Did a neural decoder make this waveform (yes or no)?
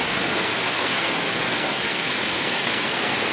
yes